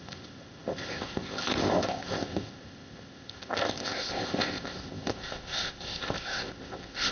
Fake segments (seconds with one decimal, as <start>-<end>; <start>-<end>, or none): 0.0-7.1